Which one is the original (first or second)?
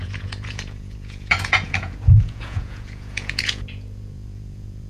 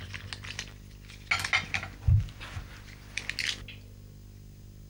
second